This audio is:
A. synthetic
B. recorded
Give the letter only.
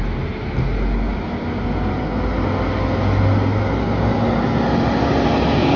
B